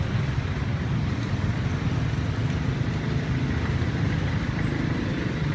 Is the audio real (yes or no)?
no